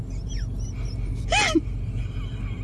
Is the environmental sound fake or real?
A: real